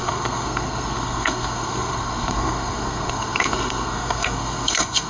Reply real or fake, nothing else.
fake